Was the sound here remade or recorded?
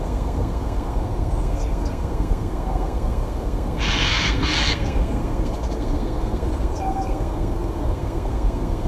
remade